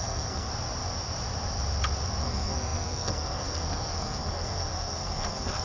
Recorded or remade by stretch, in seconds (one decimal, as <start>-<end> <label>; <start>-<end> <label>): 0.0-0.5 remade; 0.5-2.2 recorded; 2.2-5.6 remade